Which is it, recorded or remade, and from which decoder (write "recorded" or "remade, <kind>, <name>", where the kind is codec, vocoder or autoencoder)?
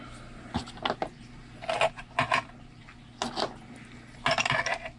recorded